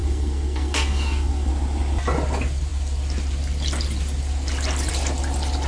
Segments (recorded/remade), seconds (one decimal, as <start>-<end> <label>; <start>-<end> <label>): 0.0-1.5 remade; 1.5-5.7 recorded